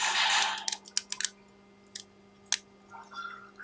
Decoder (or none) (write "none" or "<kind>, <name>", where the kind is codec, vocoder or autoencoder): none